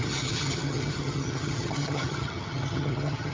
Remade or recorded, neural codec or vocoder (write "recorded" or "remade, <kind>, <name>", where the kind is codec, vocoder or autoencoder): remade, vocoder, HiFi-GAN